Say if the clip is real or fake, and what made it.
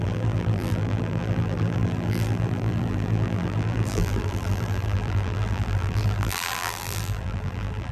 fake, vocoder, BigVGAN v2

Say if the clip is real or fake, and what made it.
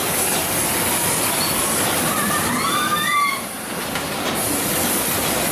fake, vocoder, BigVGAN v2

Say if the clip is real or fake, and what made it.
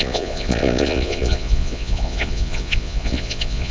fake, vocoder, Vocos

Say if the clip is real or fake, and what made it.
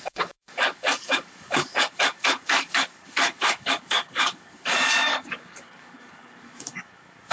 fake, codec, DAC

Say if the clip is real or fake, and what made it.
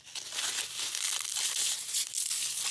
real